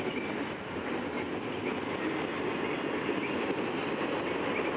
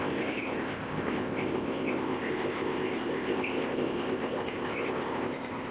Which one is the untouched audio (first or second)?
first